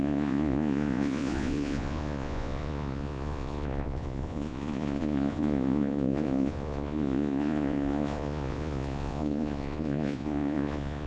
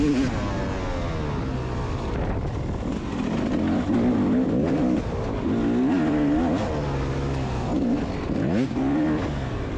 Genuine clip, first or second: second